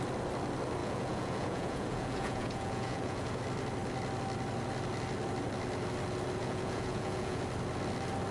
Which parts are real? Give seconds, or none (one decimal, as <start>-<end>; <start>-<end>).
0.0-0.8; 3.4-6.4; 7.4-8.3